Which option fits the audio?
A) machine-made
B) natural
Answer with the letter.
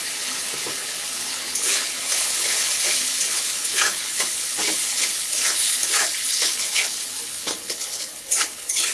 A